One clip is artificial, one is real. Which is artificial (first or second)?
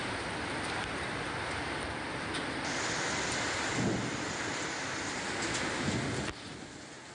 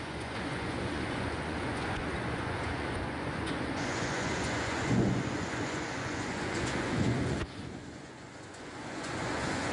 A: second